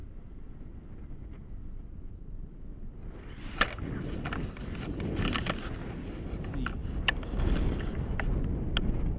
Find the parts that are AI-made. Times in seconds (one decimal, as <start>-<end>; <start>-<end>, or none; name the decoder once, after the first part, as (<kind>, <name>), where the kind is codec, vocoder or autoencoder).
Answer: none